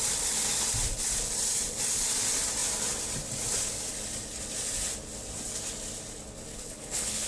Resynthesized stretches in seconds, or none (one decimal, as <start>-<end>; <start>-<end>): 6.5-7.3